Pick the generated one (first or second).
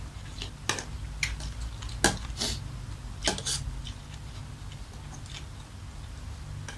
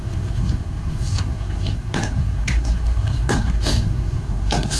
second